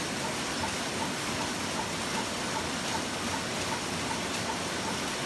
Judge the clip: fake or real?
real